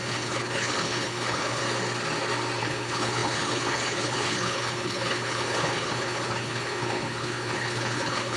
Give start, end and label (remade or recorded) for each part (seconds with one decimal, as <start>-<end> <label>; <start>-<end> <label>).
0.0-1.6 remade; 1.6-2.6 recorded; 2.6-8.4 remade